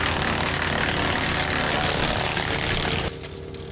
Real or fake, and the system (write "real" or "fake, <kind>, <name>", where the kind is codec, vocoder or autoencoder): real